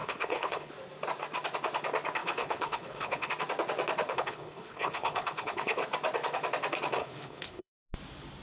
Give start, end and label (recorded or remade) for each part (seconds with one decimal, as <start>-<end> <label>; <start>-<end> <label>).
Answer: 0.0-0.7 remade; 0.7-2.2 recorded; 2.2-3.3 remade; 3.3-4.0 recorded; 4.0-5.8 remade; 5.8-7.0 recorded; 7.0-7.7 remade; 7.7-8.4 recorded